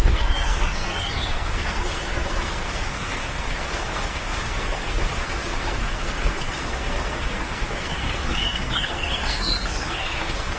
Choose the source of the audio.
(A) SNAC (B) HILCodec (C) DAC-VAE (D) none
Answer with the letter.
A